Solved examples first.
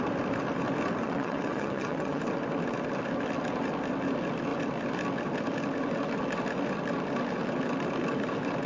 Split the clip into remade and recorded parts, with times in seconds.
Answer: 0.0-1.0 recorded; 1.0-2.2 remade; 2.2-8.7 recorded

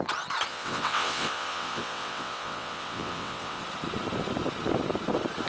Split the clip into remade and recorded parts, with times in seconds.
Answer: 0.0-0.5 recorded; 0.5-3.6 remade; 3.6-5.5 recorded